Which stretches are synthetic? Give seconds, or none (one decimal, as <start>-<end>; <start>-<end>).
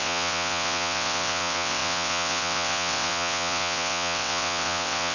0.0-5.1